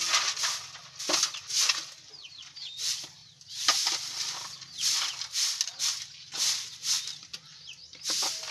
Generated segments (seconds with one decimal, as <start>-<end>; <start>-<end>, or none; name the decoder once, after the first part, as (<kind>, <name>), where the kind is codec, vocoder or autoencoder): none

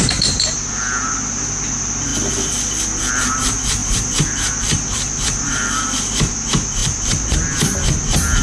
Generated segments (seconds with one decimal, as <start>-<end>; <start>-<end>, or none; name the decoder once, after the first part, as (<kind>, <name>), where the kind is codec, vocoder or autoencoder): 0.0-2.1 (vocoder, BigVGAN v2); 3.1-8.4

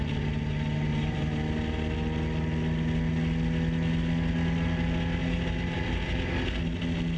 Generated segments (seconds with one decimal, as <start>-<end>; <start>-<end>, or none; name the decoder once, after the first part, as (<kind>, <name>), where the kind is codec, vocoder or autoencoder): 0.9-1.4 (vocoder, BigVGAN v2); 5.2-6.3

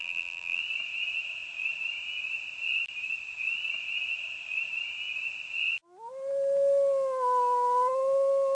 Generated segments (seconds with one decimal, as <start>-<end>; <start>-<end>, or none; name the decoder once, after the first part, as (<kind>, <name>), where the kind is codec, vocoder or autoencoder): 0.0-0.6 (vocoder, BigVGAN v2)